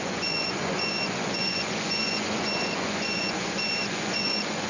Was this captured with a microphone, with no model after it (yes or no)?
no